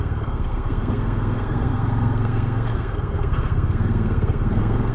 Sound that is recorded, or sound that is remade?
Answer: remade